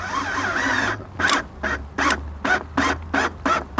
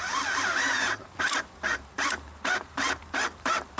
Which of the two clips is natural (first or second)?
first